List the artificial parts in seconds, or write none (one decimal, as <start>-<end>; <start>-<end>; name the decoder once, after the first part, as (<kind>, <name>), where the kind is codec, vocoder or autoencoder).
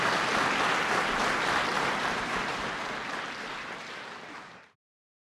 1.7-4.5 (vocoder, BigVGAN v2)